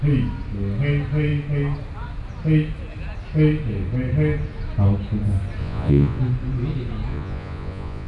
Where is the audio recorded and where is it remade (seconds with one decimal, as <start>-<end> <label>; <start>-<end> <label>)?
0.0-5.6 recorded; 5.6-6.2 remade; 6.2-7.1 recorded; 7.1-8.1 remade